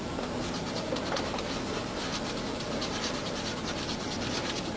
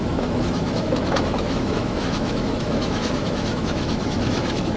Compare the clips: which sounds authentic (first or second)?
first